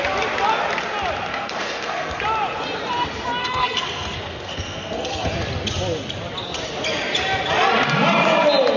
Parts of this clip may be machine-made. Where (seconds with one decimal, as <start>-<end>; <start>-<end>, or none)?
1.3-2.2; 3.4-5.3